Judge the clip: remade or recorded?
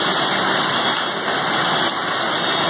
recorded